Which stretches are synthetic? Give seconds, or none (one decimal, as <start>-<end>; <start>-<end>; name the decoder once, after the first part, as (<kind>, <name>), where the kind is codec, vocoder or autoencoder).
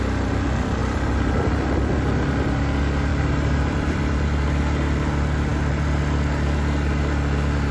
0.8-1.9 (vocoder, BigVGAN v2); 3.1-4.0